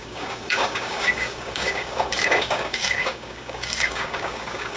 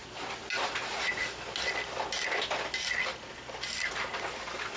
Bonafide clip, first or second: second